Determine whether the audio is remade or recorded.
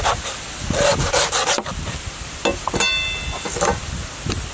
recorded